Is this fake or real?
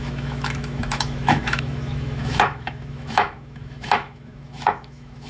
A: fake